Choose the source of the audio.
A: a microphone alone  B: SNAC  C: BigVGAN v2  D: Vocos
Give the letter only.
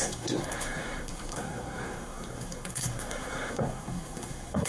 B